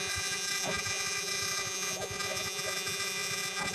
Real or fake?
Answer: fake